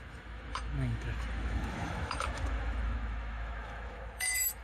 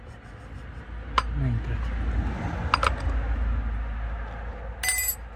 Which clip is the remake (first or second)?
first